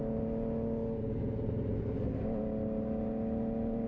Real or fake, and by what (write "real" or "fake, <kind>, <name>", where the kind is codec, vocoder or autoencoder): real